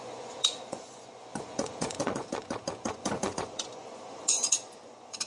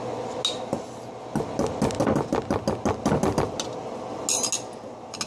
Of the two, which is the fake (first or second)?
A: first